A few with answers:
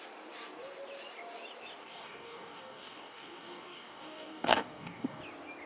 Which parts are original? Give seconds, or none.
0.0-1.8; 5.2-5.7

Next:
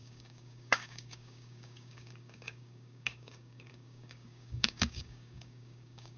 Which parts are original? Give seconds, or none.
none